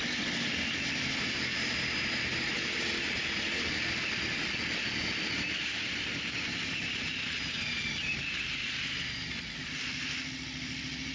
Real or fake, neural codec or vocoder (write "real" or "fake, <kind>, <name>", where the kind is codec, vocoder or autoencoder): real